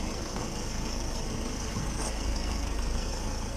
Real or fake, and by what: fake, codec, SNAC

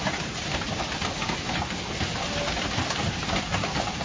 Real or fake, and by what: real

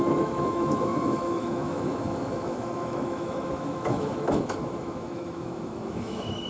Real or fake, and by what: fake, autoencoder, DAC-VAE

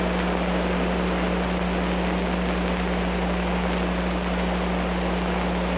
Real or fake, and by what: real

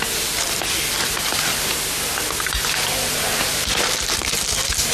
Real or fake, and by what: real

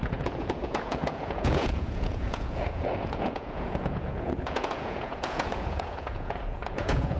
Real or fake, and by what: fake, vocoder, Vocos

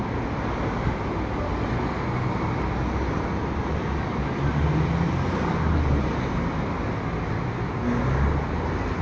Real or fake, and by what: real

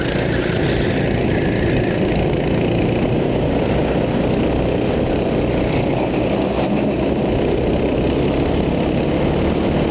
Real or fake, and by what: real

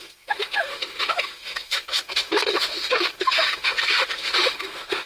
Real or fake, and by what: fake, autoencoder, DAC-VAE